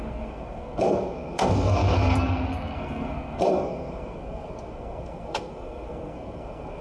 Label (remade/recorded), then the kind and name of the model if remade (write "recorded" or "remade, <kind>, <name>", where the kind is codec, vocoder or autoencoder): remade, codec, SNAC